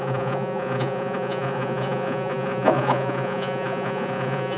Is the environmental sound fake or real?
fake